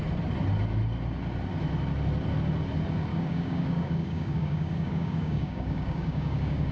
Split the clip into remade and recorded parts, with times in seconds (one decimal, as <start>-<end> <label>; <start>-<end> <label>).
0.0-3.1 recorded; 3.1-6.7 remade